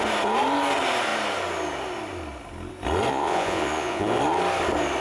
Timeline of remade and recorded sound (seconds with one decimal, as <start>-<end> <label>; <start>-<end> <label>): 0.0-3.1 recorded; 3.1-4.2 remade; 4.2-5.0 recorded